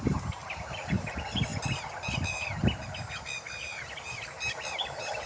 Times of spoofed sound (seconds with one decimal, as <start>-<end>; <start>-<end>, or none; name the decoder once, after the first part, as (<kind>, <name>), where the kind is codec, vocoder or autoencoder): 0.0-1.5 (vocoder, BigVGAN v2); 4.7-5.3